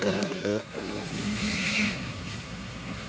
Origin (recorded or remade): remade